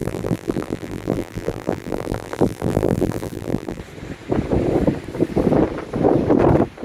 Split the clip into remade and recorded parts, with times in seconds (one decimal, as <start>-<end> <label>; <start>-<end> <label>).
0.0-3.8 remade; 3.8-6.8 recorded